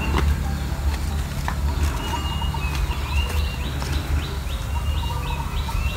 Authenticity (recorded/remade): recorded